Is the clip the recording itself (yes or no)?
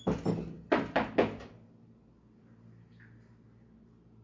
yes